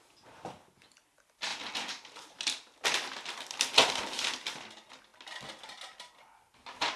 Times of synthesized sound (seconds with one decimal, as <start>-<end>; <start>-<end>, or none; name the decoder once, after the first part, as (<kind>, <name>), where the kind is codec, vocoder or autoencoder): none

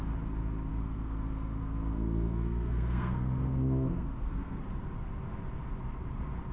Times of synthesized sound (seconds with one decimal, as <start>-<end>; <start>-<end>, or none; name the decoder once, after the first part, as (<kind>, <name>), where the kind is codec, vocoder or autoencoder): 0.7-4.6 (codec, SNAC)

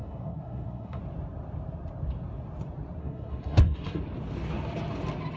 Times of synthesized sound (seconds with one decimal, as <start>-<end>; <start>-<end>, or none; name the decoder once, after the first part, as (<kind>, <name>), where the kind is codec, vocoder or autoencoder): 0.0-1.0 (codec, SNAC); 3.0-4.0

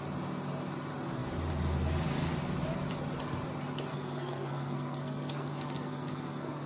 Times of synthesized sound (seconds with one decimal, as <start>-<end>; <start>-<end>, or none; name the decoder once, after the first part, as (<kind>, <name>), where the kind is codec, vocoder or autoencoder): 3.9-6.7 (codec, SNAC)